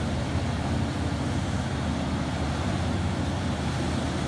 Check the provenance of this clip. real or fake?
real